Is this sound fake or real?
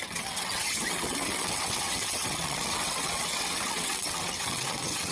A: fake